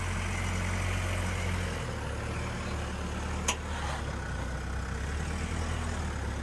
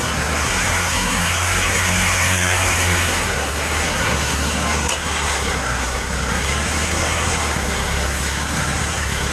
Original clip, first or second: first